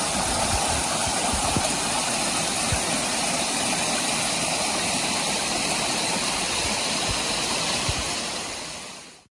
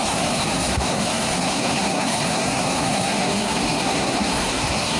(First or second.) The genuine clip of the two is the first